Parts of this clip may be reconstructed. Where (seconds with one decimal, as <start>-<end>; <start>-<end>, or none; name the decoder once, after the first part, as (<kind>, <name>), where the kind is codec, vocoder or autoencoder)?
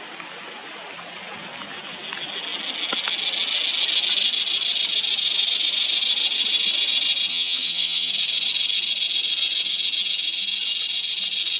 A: 7.3-8.1 (vocoder, HiFi-GAN)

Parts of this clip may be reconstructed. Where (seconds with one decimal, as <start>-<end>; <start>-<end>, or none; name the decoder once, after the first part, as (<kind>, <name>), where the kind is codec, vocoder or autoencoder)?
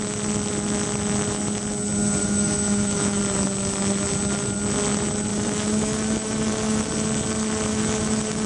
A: 2.2-3.2 (autoencoder, DAC-VAE); 5.3-6.9; 7.7-8.5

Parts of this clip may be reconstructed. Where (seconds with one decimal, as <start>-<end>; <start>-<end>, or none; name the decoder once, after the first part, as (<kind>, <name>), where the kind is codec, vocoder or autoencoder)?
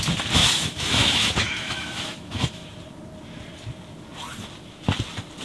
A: 0.4-2.7 (autoencoder, DAC-VAE)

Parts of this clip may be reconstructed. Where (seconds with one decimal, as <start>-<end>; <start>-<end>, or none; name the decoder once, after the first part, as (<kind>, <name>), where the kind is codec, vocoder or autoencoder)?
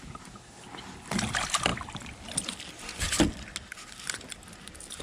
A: none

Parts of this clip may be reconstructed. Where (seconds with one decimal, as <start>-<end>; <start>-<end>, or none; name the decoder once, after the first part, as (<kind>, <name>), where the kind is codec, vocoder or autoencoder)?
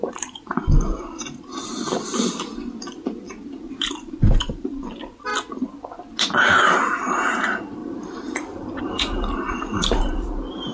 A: 0.0-1.5 (vocoder, BigVGAN v2); 3.6-5.3; 7.0-10.7